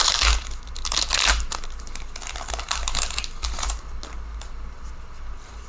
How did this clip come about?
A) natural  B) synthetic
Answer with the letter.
A